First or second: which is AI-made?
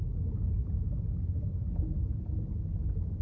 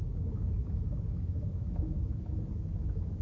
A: second